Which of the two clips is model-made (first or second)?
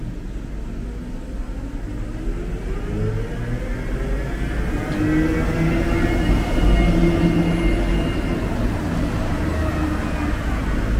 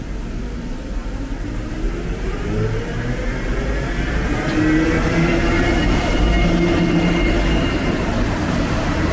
second